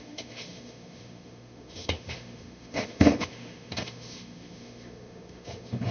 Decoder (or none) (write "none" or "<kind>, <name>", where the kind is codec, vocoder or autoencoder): autoencoder, DAC-VAE